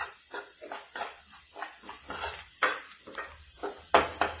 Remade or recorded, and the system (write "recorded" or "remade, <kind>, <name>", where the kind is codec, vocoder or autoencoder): recorded